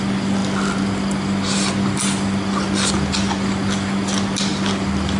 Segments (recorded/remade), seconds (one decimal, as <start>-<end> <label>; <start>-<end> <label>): 0.0-5.2 recorded